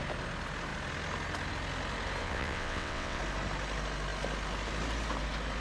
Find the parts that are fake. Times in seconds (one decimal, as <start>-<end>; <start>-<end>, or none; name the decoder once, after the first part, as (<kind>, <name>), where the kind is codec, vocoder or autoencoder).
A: 2.2-3.2 (vocoder, WaveNeXt)